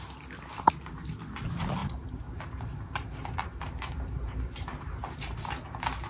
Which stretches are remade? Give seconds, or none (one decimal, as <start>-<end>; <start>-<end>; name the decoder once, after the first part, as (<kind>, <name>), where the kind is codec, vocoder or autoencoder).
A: 0.5-1.1 (vocoder, BigVGAN v2); 1.8-5.5